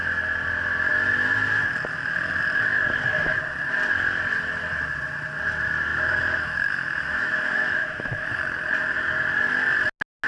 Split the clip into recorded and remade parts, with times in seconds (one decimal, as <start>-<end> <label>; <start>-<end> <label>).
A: 0.0-5.9 recorded; 5.9-8.4 remade; 8.4-10.3 recorded